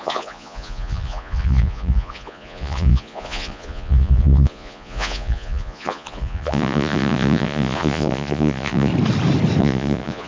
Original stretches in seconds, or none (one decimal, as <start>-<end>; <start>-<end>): 8.9-9.6